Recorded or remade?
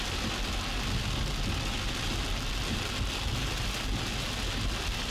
recorded